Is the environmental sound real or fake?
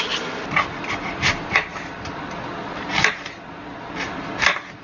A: real